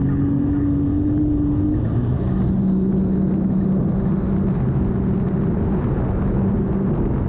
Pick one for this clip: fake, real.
real